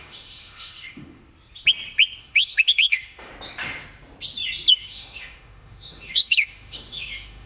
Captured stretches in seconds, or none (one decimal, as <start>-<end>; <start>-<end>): 1.2-2.2; 3.3-4.7